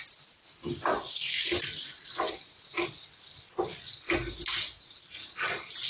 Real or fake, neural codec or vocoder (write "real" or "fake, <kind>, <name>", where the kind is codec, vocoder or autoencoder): real